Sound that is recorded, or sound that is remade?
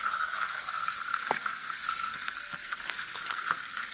remade